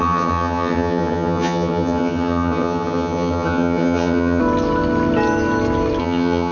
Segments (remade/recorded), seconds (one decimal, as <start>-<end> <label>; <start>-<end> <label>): 0.0-4.4 remade; 4.4-6.0 recorded; 6.0-6.5 remade